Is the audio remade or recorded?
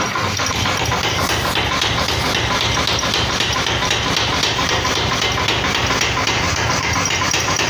recorded